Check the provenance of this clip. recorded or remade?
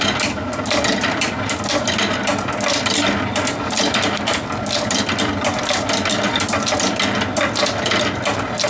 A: recorded